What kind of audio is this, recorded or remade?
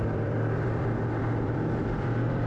remade